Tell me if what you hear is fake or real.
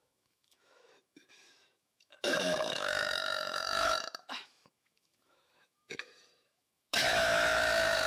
fake